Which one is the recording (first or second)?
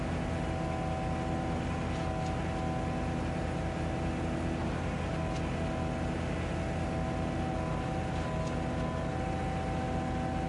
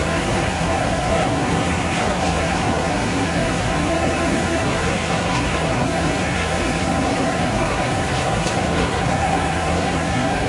first